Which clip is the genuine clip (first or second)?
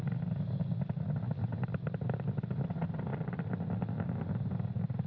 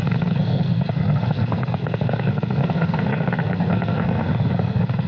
first